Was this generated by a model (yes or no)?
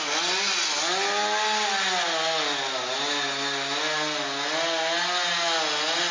no